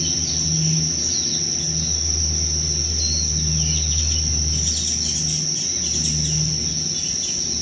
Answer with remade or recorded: recorded